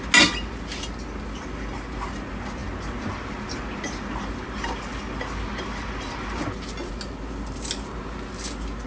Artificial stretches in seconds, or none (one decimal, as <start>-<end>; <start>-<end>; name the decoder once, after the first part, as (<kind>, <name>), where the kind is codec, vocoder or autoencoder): none

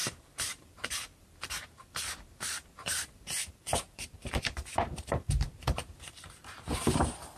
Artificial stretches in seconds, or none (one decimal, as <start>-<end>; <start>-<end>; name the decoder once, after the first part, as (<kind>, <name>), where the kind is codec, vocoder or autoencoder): 0.0-6.4 (vocoder, BigVGAN v2)

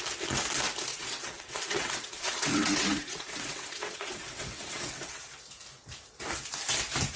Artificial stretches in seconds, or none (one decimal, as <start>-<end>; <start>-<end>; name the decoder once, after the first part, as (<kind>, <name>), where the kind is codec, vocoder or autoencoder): 0.9-5.2 (vocoder, WaveNeXt)

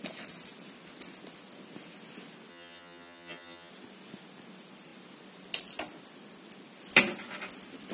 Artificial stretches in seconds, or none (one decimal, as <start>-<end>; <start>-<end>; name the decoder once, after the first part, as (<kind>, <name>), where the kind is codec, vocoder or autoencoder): 2.5-3.7 (vocoder, HiFi-GAN)

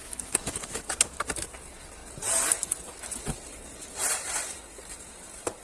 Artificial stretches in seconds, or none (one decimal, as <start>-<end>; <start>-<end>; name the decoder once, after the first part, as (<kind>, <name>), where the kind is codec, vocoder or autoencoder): 0.0-1.2 (autoencoder, DAC-VAE)

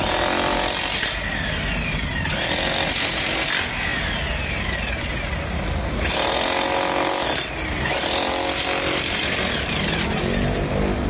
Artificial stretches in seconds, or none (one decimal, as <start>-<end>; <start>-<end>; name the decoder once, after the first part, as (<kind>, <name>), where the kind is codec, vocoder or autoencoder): none

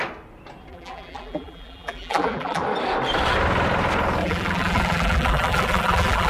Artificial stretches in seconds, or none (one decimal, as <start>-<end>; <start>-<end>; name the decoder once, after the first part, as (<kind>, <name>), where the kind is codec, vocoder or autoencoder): 0.7-2.6 (vocoder, BigVGAN v2); 4.2-6.3

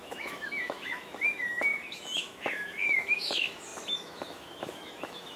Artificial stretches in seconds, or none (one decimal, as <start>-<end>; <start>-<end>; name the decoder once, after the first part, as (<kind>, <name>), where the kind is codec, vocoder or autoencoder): 0.0-5.4 (autoencoder, DAC-VAE)